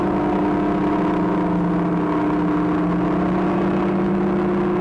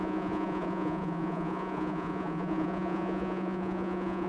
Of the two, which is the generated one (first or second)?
second